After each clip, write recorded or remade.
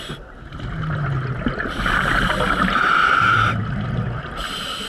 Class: recorded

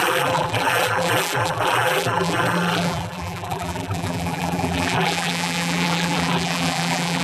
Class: remade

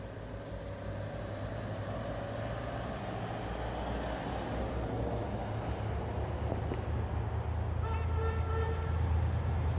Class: recorded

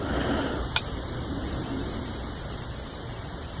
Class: remade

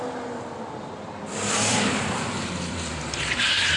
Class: remade